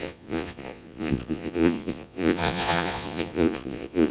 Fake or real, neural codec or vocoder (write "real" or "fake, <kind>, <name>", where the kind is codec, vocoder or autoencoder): fake, vocoder, Vocos